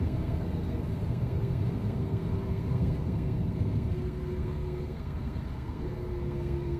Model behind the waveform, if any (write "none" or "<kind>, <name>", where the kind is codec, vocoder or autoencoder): codec, SNAC